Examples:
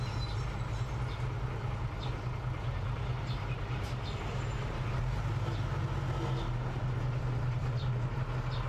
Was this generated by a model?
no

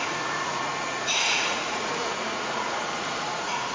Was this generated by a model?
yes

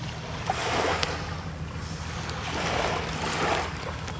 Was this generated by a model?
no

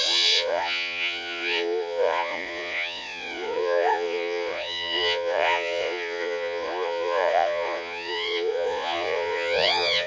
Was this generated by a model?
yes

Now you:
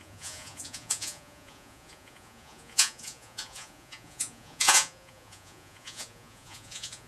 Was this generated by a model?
yes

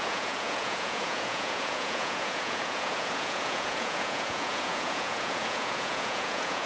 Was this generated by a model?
yes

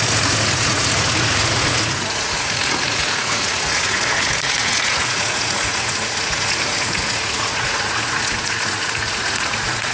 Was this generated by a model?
yes